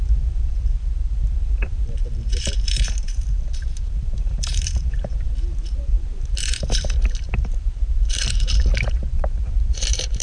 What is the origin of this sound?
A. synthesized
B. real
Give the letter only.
A